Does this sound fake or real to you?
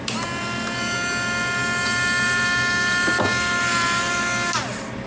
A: real